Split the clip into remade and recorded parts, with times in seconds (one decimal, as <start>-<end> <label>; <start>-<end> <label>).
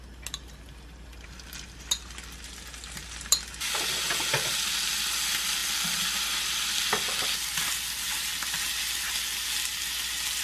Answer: 0.0-5.6 recorded; 5.6-6.7 remade; 6.7-10.4 recorded